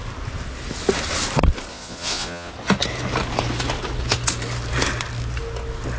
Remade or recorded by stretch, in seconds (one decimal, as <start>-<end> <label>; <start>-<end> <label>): 0.0-1.7 recorded; 1.7-2.5 remade; 2.5-6.0 recorded